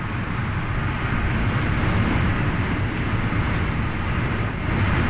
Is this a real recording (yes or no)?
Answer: yes